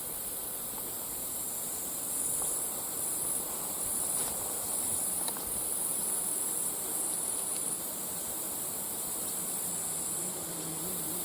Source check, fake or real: fake